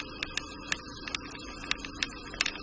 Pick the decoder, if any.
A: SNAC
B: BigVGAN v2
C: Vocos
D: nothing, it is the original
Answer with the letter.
D